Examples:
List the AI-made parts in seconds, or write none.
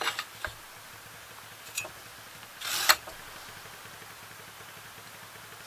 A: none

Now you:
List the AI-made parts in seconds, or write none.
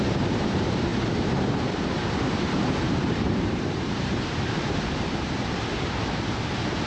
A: 0.0-6.9 (vocoder, BigVGAN v2)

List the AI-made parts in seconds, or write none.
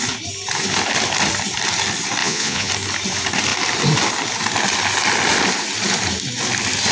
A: 2.2-2.7 (vocoder, Vocos)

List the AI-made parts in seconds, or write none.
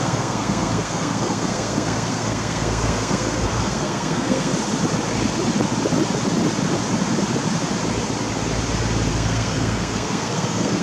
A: 0.0-4.5 (codec, SNAC); 9.1-10.8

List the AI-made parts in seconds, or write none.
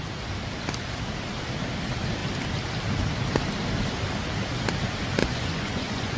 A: 5.2-6.2 (vocoder, Vocos)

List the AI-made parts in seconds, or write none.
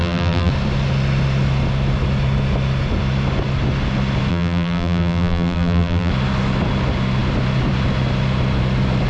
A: 0.0-0.5 (vocoder, BigVGAN v2); 4.3-6.1